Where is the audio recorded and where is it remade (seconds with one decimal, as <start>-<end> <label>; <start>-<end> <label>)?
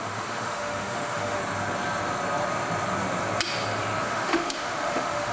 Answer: 0.0-1.4 remade; 1.4-4.0 recorded; 4.0-5.3 remade